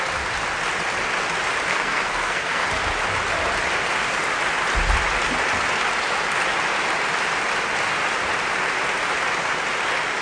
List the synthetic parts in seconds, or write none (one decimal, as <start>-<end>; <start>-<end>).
1.7-2.7